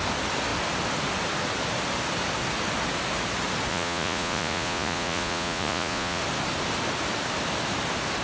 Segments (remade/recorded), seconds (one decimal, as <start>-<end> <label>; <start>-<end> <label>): 0.0-3.7 recorded; 3.7-6.2 remade; 6.2-8.2 recorded